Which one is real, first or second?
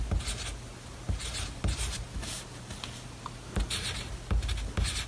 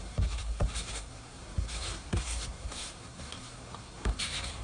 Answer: first